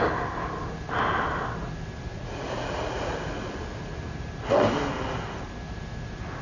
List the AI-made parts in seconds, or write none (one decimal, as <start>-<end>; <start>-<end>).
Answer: 2.1-3.1